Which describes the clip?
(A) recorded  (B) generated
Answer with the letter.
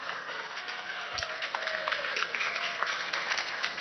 B